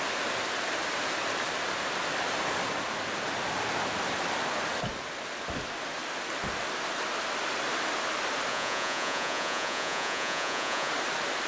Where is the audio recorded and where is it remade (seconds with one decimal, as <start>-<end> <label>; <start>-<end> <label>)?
0.0-8.5 recorded; 8.5-10.9 remade; 10.9-11.5 recorded